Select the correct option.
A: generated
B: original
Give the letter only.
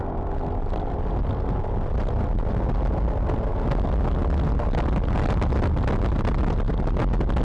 B